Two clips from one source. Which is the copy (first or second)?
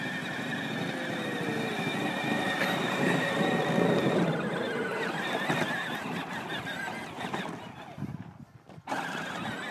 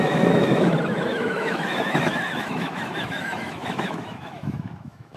second